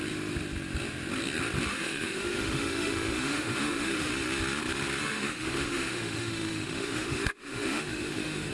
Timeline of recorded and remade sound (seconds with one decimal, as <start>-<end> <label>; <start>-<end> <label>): 0.0-1.7 recorded; 1.7-4.1 remade; 4.1-5.0 recorded; 5.0-8.5 remade